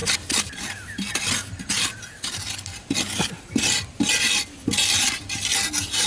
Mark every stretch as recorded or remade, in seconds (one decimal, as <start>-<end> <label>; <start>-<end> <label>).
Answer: 0.0-6.1 recorded